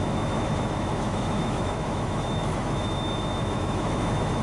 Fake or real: fake